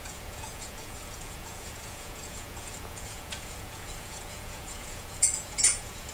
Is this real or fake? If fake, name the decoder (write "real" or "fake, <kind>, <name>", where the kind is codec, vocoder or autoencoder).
fake, vocoder, Vocos